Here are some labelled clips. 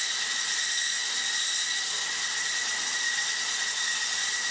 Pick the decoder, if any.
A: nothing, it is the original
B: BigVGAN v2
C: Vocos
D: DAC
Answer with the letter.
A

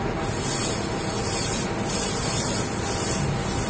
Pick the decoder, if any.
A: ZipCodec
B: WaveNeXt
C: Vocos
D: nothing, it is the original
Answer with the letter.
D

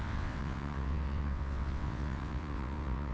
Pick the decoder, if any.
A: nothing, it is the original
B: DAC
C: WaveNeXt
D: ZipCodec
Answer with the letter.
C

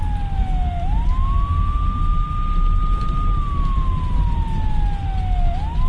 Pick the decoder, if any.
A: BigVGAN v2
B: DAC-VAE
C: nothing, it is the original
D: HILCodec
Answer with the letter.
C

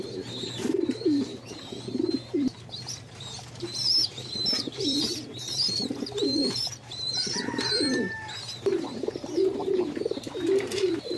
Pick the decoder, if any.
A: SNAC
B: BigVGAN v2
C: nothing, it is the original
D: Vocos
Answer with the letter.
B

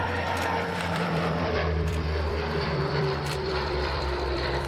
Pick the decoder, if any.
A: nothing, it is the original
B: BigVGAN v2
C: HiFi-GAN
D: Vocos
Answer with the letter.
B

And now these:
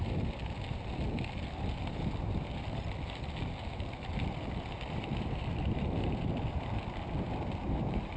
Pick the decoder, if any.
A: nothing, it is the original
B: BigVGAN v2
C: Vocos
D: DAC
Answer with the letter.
A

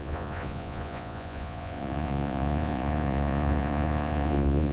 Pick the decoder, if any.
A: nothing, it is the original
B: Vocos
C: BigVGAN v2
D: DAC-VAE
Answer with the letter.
B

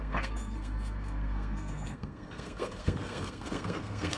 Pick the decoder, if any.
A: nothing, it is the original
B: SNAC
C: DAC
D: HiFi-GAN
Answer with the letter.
B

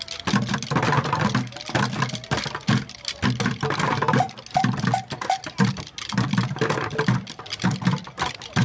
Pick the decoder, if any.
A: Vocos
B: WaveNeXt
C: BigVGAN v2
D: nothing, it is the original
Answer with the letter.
D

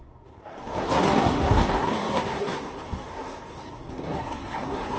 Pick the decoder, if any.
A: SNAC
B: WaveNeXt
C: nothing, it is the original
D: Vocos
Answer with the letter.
A